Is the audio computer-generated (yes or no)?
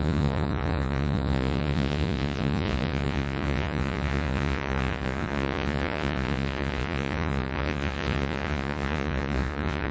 yes